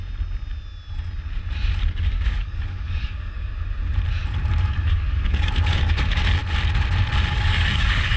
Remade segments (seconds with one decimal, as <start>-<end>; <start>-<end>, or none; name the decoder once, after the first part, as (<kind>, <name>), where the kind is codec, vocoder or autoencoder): 1.9-3.5 (codec, DAC); 4.5-6.4; 7.3-8.2